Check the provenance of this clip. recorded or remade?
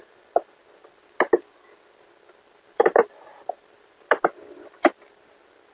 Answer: recorded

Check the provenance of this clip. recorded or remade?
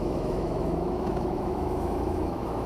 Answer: remade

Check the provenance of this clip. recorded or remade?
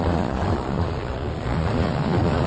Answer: remade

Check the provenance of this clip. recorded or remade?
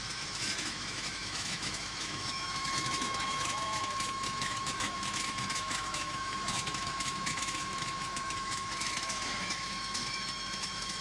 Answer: remade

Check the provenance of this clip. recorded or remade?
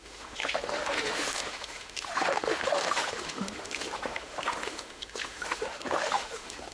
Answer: remade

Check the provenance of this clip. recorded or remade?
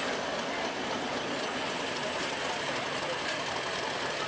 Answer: recorded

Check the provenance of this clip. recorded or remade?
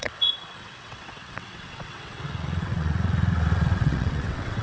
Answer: remade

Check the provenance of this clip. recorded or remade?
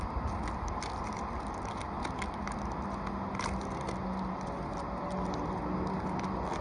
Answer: recorded